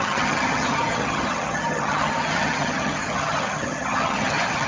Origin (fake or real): fake